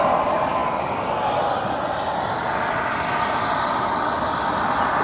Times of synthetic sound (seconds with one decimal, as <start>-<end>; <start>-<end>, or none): none